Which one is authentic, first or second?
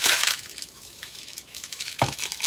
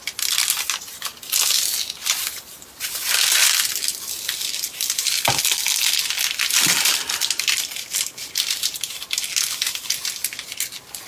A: second